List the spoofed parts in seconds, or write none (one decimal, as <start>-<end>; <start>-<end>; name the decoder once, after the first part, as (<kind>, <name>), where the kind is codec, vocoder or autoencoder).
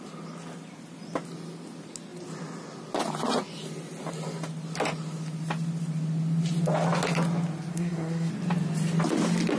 7.7-8.3 (codec, SNAC)